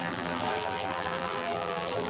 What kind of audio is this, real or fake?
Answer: fake